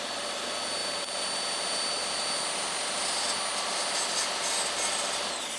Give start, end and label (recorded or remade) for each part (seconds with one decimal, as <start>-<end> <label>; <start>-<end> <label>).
0.0-5.6 recorded